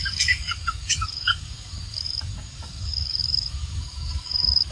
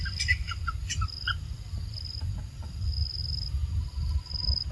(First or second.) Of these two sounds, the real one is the second